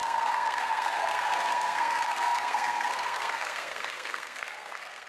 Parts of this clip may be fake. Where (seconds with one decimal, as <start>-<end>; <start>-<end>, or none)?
0.0-5.1